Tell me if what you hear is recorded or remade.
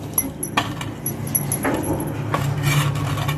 recorded